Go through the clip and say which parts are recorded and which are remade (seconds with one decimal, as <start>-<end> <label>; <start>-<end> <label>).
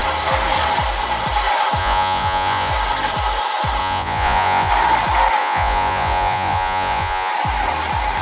0.0-1.8 recorded; 1.8-2.7 remade; 2.7-3.8 recorded; 3.8-4.7 remade; 4.7-5.4 recorded; 5.4-7.3 remade; 7.3-8.2 recorded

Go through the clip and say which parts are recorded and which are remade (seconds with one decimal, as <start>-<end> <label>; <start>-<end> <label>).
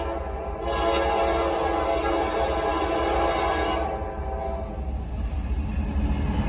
0.0-6.5 recorded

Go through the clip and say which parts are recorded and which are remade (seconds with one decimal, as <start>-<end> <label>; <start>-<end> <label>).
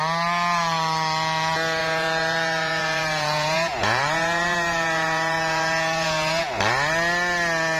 0.0-1.8 recorded; 1.8-6.4 remade; 6.4-7.8 recorded